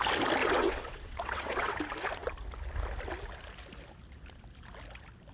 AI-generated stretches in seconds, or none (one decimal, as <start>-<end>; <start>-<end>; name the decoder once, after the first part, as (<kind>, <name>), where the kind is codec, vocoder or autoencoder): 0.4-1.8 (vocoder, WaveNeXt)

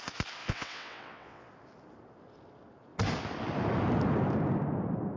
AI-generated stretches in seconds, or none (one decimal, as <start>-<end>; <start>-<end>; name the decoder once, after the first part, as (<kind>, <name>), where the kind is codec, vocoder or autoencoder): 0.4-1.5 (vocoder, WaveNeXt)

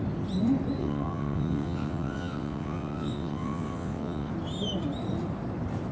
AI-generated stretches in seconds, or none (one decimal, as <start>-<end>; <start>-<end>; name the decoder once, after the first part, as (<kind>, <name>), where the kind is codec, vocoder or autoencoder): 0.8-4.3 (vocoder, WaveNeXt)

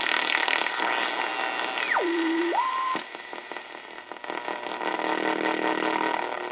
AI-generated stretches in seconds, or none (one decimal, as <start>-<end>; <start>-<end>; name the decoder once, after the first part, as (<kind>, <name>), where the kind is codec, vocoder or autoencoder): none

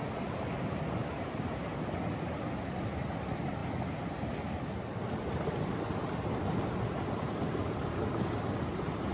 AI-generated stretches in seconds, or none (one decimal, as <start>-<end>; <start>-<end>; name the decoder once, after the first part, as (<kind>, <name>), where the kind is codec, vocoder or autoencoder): none

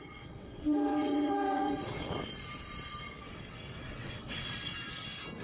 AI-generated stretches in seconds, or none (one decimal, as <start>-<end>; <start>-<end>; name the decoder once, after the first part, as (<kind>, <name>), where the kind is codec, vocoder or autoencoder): 0.0-2.3 (vocoder, WaveNeXt); 3.0-4.7

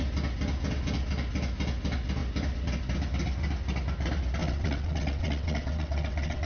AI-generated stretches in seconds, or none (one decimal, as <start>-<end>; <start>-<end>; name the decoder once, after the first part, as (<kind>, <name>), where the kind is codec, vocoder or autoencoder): 4.4-6.5 (vocoder, WaveNeXt)

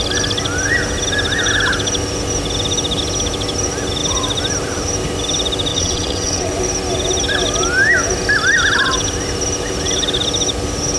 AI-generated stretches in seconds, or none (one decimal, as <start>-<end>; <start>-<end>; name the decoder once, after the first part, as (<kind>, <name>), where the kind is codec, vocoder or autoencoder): 5.7-6.5 (vocoder, WaveNeXt)